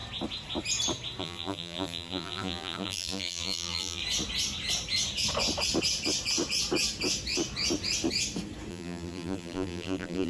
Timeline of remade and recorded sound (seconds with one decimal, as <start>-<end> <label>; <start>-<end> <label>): 0.0-1.2 recorded; 1.2-4.0 remade; 4.0-8.7 recorded; 8.7-10.3 remade